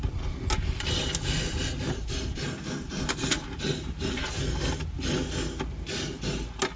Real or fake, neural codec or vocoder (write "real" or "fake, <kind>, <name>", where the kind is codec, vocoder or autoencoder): real